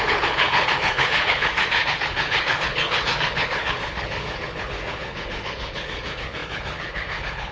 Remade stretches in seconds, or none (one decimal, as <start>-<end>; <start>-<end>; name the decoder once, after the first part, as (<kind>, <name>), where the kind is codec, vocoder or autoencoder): 0.0-7.5 (codec, HILCodec)

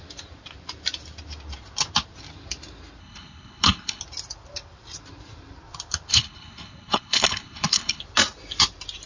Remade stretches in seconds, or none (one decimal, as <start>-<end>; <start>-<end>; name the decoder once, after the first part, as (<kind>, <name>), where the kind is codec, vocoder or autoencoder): 3.0-4.0 (codec, HILCodec); 6.1-8.0

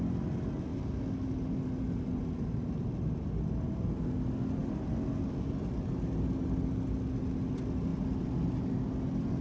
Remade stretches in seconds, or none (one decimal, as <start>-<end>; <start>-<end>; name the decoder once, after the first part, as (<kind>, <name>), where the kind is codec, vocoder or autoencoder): none

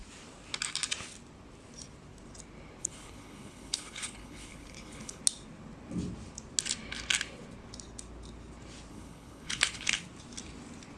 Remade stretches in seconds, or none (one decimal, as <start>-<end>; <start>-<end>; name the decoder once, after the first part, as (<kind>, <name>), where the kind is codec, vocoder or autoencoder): 2.8-5.2 (codec, HILCodec); 8.9-10.0

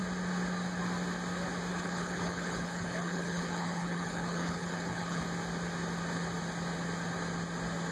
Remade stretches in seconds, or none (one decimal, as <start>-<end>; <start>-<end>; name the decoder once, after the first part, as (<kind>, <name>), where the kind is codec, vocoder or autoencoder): 1.7-5.2 (codec, HILCodec)